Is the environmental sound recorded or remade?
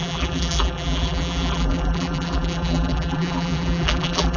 remade